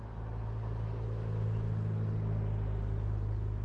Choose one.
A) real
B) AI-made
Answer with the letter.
A